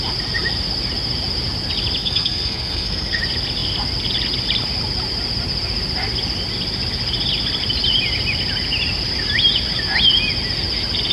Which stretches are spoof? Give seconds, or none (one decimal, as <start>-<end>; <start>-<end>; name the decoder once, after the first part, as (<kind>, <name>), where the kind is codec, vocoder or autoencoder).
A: 2.0-3.2 (codec, SNAC)